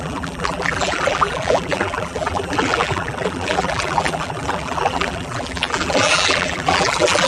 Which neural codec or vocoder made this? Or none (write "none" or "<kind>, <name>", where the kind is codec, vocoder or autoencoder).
vocoder, BigVGAN v2